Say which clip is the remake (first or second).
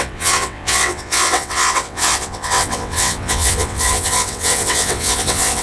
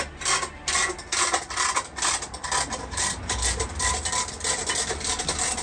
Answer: first